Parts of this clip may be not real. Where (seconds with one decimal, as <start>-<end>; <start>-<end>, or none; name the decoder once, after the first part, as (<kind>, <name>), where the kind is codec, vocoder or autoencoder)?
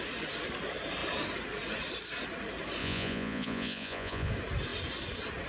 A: 2.8-4.3 (vocoder, Vocos)